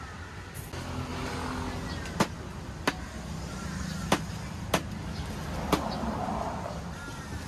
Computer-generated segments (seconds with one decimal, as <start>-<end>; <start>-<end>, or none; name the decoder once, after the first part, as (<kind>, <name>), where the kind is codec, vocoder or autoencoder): none